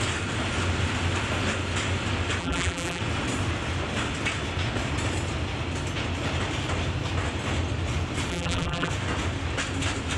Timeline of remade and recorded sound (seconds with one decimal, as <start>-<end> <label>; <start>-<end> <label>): 0.0-2.4 recorded; 2.4-3.0 remade; 3.0-8.3 recorded; 8.3-8.9 remade; 8.9-10.2 recorded